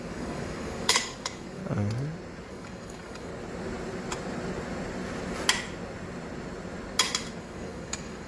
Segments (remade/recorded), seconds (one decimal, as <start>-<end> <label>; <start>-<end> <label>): 0.0-1.6 remade; 1.6-2.5 recorded; 2.5-3.3 remade; 3.3-7.4 recorded; 7.4-8.3 remade